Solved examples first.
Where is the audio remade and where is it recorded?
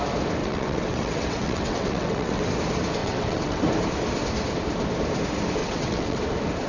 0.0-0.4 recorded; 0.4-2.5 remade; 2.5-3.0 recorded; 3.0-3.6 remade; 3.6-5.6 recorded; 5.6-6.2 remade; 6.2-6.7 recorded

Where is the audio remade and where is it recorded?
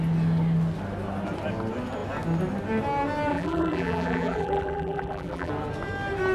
0.0-3.3 recorded; 3.3-5.5 remade; 5.5-6.3 recorded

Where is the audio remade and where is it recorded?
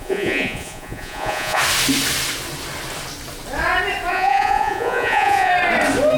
0.0-1.6 remade; 1.6-4.1 recorded; 4.1-5.5 remade; 5.5-6.2 recorded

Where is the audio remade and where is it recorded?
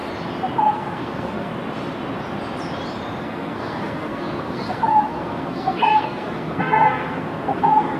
0.0-0.6 recorded; 0.6-1.5 remade; 1.5-3.2 recorded; 3.2-8.0 remade